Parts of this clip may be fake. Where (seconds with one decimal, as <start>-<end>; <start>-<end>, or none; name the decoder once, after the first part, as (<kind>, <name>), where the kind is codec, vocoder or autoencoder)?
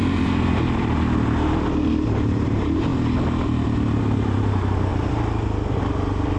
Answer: 0.0-0.9 (vocoder, BigVGAN v2); 2.1-2.9; 4.0-4.9